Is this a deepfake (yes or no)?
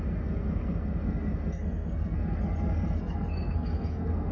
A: yes